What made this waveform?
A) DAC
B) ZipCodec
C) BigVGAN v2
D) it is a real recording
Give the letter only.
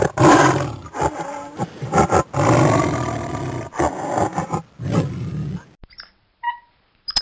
D